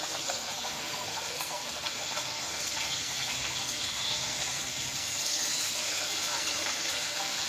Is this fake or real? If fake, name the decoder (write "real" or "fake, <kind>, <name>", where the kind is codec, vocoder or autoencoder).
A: fake, codec, SNAC